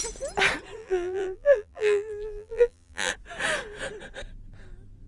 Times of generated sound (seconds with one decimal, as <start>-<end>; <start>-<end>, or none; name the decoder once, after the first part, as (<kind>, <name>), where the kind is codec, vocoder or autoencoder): 0.8-3.1 (vocoder, BigVGAN v2)